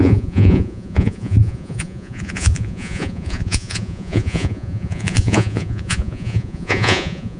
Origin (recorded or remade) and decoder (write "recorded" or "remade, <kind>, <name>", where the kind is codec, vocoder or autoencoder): remade, vocoder, Vocos